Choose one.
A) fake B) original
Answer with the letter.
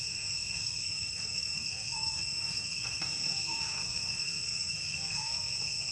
A